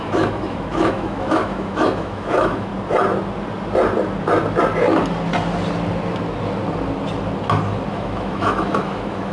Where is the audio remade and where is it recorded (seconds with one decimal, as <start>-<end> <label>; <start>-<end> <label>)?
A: 0.0-2.7 remade; 2.7-7.9 recorded; 7.9-9.3 remade